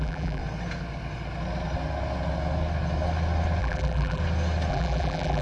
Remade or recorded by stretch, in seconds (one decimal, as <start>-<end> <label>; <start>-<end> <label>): 0.0-0.4 remade; 0.4-3.6 recorded; 3.6-4.2 remade; 4.2-4.7 recorded; 4.7-5.4 remade